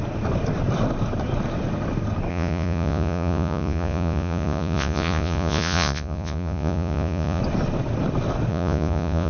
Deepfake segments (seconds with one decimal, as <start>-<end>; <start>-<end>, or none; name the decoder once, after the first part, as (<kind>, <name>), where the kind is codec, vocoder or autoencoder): 2.3-7.4 (vocoder, Vocos); 8.5-9.3